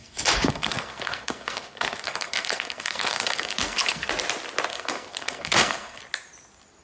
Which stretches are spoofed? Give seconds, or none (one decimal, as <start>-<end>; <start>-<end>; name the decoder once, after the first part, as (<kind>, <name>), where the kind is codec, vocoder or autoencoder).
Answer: 0.0-4.1 (codec, SNAC); 4.7-6.0

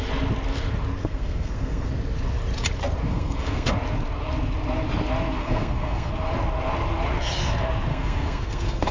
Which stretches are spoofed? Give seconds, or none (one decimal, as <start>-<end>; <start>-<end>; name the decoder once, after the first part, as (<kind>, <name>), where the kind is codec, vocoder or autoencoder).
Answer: 1.0-1.9 (codec, SNAC); 3.1-3.7; 5.4-6.1; 7.9-8.9

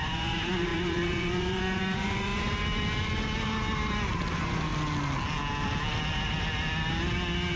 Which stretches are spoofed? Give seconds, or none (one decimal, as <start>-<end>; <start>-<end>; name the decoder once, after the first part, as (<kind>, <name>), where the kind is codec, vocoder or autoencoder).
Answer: 0.0-2.3 (vocoder, Vocos); 4.3-4.7